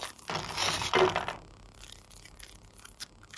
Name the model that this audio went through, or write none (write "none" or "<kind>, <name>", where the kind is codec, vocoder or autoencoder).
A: none